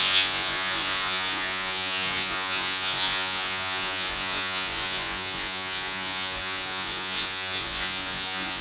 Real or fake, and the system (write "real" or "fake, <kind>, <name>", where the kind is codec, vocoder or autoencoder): fake, vocoder, Vocos